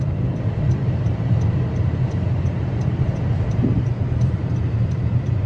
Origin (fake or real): fake